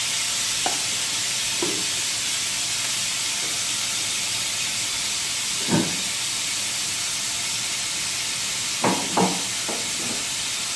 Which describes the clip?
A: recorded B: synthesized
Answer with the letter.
A